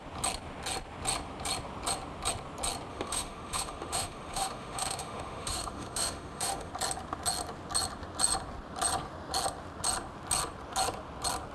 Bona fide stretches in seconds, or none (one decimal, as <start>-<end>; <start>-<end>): 0.0-2.9; 6.7-11.5